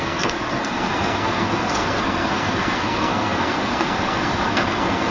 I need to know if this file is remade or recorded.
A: remade